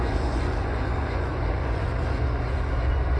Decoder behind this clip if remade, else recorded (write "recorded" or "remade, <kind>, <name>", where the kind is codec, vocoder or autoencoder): remade, vocoder, Vocos